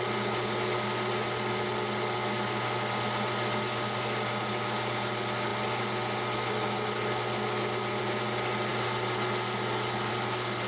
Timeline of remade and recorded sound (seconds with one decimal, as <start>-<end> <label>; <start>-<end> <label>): 0.0-10.7 recorded